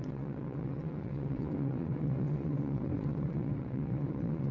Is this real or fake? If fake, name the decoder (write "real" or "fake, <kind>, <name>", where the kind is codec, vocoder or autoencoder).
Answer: fake, vocoder, WaveNeXt